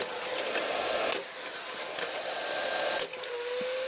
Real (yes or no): yes